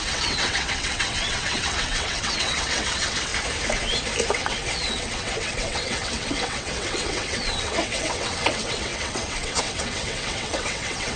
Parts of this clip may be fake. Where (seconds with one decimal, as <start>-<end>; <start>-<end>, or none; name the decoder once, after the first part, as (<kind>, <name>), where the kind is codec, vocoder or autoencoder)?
0.0-3.3 (vocoder, WaveNeXt); 4.3-11.2